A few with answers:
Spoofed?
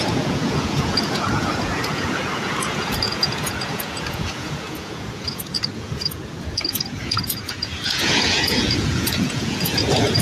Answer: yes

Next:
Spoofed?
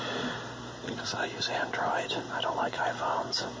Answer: no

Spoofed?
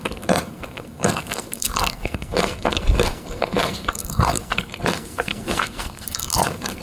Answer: yes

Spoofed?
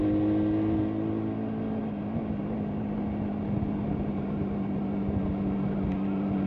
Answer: no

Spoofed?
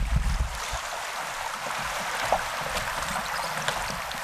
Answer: no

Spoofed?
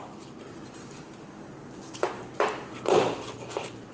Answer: yes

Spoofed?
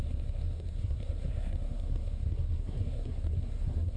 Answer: yes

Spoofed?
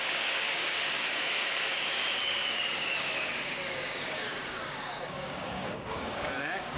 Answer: yes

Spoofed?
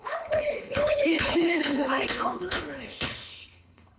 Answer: yes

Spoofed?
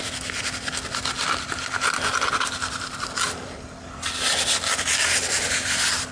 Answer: no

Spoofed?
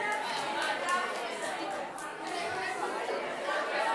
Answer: no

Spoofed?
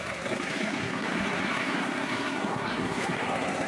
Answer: yes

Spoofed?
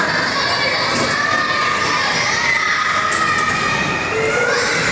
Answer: no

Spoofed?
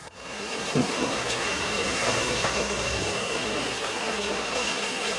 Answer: yes